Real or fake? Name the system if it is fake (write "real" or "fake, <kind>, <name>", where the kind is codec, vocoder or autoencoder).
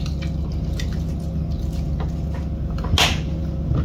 real